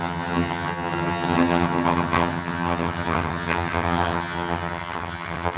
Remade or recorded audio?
remade